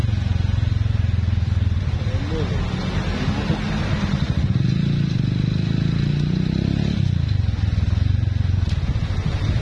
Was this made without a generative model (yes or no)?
yes